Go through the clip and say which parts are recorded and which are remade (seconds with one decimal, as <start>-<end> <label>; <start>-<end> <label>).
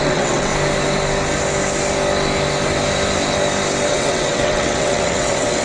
0.0-0.5 remade; 0.5-3.9 recorded; 3.9-5.6 remade